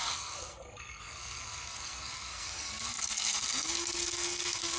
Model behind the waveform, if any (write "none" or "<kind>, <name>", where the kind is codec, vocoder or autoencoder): codec, SNAC